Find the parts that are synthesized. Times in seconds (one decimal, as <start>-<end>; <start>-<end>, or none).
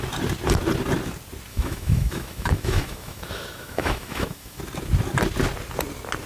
1.5-4.6